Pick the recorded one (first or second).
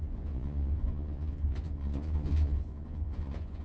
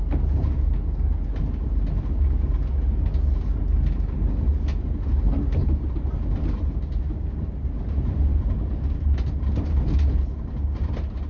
second